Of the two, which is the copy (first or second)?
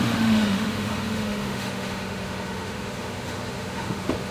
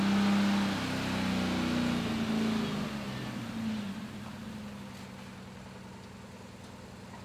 first